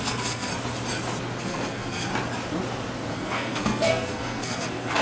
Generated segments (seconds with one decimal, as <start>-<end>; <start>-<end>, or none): 0.0-0.5; 1.4-2.1; 3.1-5.0